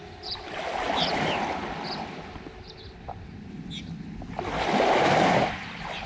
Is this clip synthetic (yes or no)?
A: no